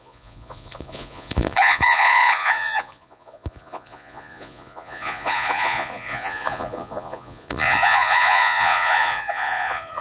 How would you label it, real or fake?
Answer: fake